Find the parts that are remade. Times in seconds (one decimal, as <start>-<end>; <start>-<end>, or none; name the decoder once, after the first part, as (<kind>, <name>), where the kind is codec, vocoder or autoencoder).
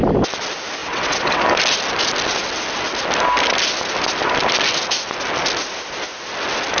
0.8-1.4 (vocoder, WaveNeXt)